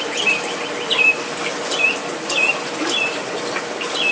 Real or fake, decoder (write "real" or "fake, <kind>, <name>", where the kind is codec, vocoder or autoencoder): real